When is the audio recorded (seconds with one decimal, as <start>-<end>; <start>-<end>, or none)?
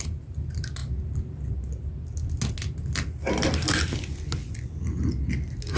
0.0-5.8